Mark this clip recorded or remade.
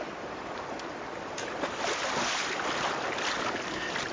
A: recorded